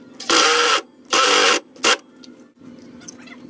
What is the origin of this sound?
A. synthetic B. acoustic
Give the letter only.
B